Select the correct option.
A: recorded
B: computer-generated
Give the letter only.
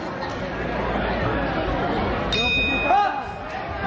A